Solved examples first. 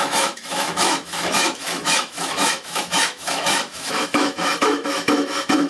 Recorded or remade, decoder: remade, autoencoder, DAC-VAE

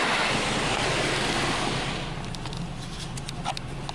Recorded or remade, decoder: recorded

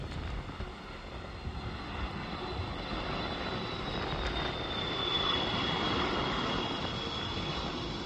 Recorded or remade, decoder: recorded